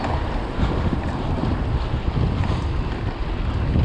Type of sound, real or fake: real